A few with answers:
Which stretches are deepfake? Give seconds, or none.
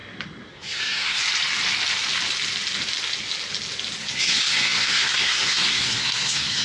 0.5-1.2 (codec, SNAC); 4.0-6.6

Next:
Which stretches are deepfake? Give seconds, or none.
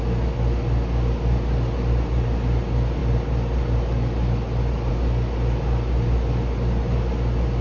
none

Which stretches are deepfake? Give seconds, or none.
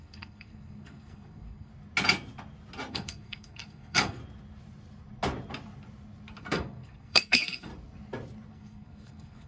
0.0-1.7 (codec, SNAC); 2.9-4.2; 6.4-7.7; 8.5-9.5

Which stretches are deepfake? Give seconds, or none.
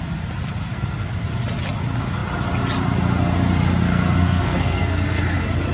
0.7-1.2 (codec, SNAC); 3.8-5.2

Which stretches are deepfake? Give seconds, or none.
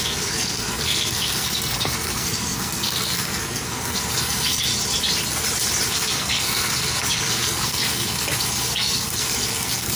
0.0-4.7 (codec, SNAC); 5.9-10.0